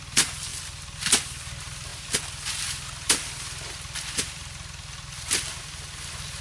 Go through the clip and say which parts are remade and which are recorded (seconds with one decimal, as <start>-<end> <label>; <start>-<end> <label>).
0.0-6.4 recorded